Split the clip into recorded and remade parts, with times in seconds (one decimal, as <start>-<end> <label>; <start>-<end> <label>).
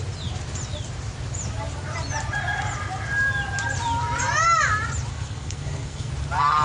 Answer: 0.0-5.1 recorded; 5.1-6.1 remade; 6.1-6.6 recorded